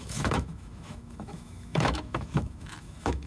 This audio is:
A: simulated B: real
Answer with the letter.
A